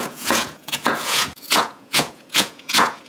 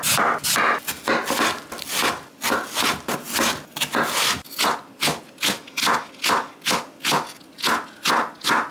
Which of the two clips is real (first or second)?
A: second